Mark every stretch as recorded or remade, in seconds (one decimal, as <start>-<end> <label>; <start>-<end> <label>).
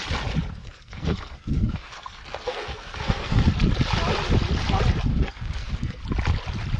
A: 0.0-0.6 recorded; 0.6-3.5 remade; 3.5-5.1 recorded; 5.1-6.0 remade; 6.0-6.8 recorded